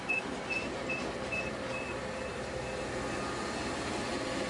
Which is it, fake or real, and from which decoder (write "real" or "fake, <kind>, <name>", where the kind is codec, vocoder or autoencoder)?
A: real